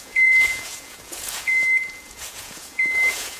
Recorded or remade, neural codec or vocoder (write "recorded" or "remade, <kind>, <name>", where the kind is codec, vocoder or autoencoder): remade, vocoder, Vocos